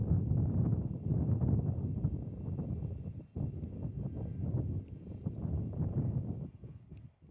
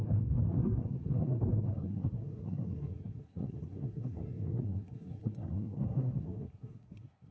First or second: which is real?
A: first